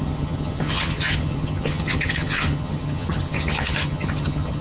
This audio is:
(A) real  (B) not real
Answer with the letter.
B